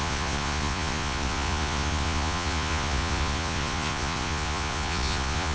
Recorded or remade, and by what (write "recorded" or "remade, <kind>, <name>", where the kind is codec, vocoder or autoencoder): remade, vocoder, Vocos